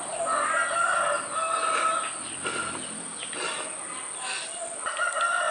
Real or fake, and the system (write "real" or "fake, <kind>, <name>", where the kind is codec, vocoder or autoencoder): real